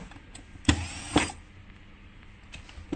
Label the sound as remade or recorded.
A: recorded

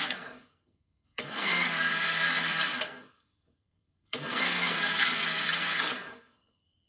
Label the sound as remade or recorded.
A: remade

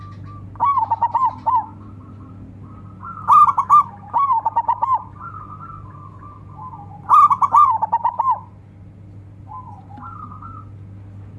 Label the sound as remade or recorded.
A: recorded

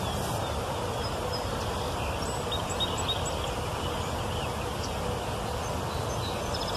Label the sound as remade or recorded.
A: recorded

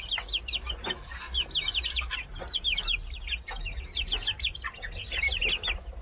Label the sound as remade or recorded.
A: recorded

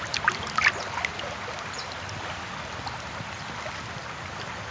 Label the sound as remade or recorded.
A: recorded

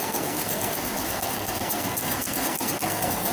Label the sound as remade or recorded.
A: remade